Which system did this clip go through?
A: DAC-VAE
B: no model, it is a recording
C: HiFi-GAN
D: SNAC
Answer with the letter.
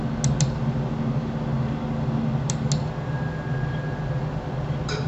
B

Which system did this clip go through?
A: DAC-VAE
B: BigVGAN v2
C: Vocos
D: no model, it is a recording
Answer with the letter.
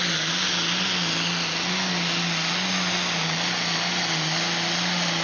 D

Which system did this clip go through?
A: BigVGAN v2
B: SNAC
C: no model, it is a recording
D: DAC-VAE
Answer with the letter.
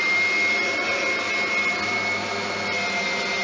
C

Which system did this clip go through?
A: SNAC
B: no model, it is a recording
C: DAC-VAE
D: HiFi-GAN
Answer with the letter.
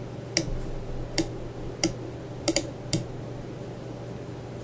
B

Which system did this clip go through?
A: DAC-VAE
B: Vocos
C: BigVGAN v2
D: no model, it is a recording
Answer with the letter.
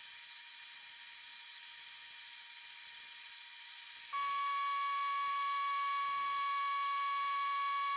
D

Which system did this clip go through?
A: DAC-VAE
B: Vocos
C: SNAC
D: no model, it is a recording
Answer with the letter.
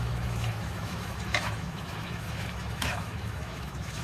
A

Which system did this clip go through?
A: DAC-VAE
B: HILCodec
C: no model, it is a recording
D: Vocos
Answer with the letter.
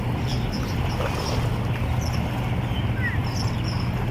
C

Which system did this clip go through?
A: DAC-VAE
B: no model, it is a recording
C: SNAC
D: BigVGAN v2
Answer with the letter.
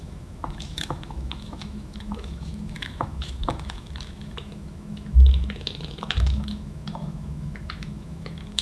A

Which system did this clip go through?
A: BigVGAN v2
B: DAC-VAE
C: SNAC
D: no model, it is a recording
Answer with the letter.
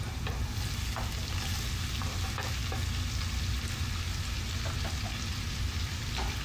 D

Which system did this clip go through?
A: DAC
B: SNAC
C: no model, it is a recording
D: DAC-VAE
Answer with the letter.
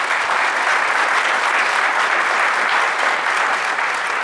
C